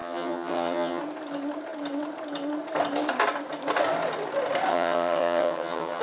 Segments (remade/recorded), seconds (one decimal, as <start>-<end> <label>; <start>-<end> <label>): 0.0-1.0 remade; 1.0-4.7 recorded; 4.7-6.0 remade

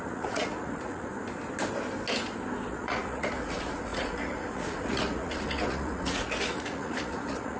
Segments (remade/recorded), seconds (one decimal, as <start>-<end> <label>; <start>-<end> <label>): 0.0-1.1 remade; 1.1-2.7 recorded; 2.7-7.6 remade

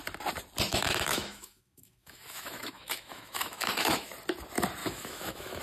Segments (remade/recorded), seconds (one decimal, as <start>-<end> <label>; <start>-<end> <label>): 0.0-0.7 recorded; 0.7-4.1 remade; 4.1-4.8 recorded; 4.8-5.6 remade